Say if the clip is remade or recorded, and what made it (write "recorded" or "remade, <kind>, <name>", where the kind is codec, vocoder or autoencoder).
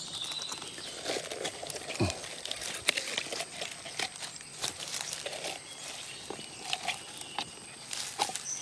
recorded